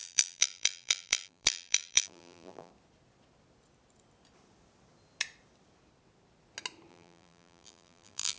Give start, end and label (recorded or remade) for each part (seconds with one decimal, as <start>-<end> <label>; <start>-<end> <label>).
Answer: 0.0-2.7 remade; 2.7-6.9 recorded; 6.9-8.4 remade